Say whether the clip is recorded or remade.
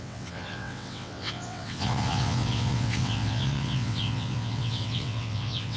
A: remade